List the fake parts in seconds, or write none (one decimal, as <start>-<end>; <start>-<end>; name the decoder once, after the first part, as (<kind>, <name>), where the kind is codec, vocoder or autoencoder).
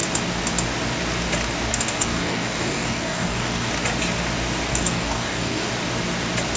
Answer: 1.7-3.7 (codec, DAC); 4.7-5.7